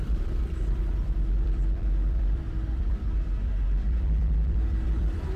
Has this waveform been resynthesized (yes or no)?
yes